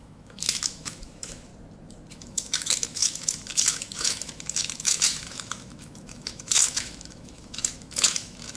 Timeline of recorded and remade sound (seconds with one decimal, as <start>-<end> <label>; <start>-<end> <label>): 0.0-1.5 remade; 1.5-2.1 recorded; 2.1-8.6 remade

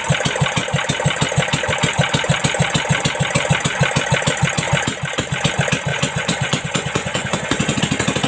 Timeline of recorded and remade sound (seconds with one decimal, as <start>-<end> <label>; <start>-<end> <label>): 0.0-5.9 recorded; 5.9-7.8 remade; 7.8-8.3 recorded